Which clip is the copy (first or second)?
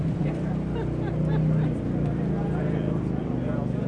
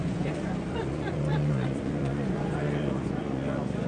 second